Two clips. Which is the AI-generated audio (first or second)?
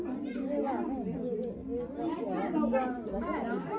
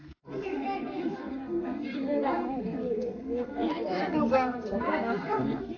second